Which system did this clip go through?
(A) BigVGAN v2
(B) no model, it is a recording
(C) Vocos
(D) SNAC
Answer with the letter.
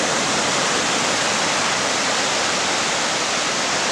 B